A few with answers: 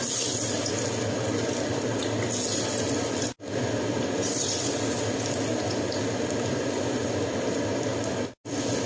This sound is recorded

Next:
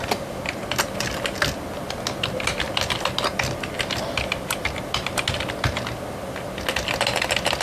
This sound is recorded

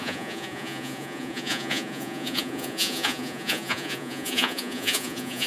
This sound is remade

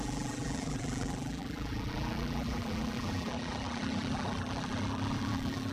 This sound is remade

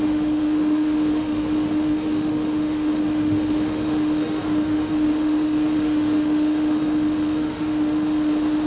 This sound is remade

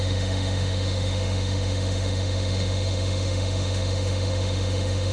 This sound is remade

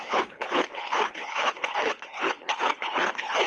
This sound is remade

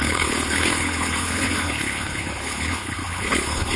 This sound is remade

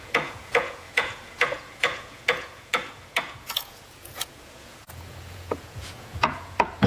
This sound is remade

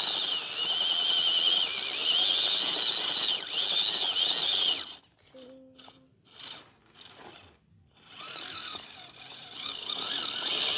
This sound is recorded